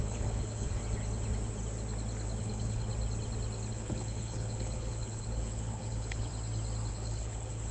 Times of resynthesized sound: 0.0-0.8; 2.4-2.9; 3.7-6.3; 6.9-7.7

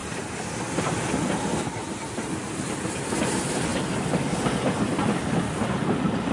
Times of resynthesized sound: none

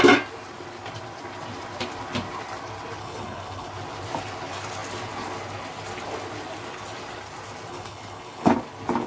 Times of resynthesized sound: 3.0-3.7; 7.7-8.5

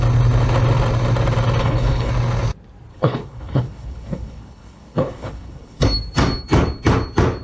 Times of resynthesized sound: 1.6-2.1; 2.9-5.8